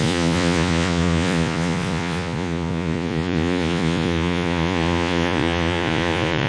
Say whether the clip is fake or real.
fake